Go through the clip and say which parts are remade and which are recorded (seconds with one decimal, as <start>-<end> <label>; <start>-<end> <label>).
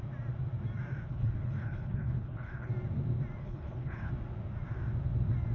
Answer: 0.0-1.1 recorded; 1.1-2.7 remade; 2.7-3.4 recorded; 3.4-4.1 remade; 4.1-5.5 recorded